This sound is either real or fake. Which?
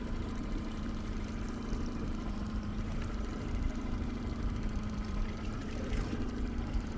fake